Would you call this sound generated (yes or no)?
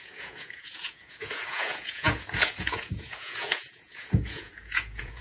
yes